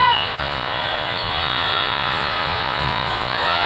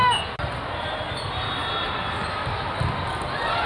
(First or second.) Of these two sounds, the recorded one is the second